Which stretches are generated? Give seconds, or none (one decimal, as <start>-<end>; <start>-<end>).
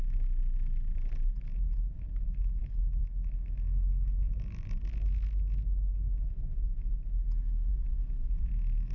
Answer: 7.7-8.5